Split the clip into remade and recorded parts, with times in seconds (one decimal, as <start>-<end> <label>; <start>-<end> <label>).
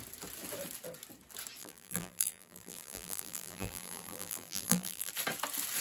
0.0-1.6 recorded; 1.6-5.1 remade; 5.1-5.8 recorded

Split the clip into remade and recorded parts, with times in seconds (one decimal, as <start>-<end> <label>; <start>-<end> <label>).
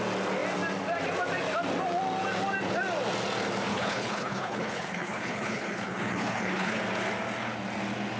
0.0-3.7 recorded; 3.7-6.8 remade; 6.8-8.2 recorded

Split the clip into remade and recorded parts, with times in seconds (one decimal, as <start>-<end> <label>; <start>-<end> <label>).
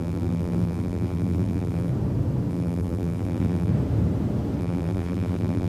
0.0-1.9 remade; 1.9-2.5 recorded; 2.5-3.7 remade; 3.7-4.6 recorded; 4.6-5.7 remade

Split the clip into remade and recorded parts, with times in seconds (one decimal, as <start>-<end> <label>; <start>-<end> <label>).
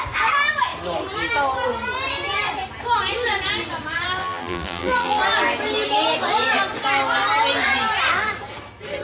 0.0-4.2 recorded; 4.2-5.2 remade; 5.2-9.0 recorded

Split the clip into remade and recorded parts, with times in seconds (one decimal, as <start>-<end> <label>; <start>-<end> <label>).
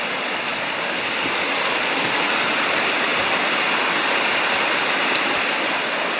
0.0-0.5 recorded; 0.5-1.0 remade; 1.0-6.2 recorded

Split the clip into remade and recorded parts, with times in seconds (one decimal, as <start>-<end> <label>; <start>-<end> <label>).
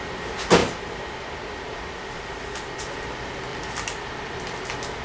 0.0-0.6 recorded; 0.6-2.8 remade; 2.8-3.5 recorded; 3.5-4.1 remade; 4.1-5.0 recorded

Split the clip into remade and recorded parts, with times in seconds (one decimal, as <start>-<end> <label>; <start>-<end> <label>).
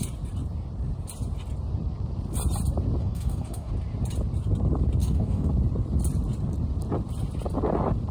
0.0-3.0 recorded; 3.0-3.7 remade; 3.7-5.0 recorded; 5.0-5.5 remade; 5.5-8.1 recorded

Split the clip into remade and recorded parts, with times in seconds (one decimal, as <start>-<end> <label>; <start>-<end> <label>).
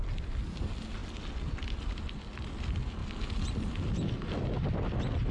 0.0-5.3 recorded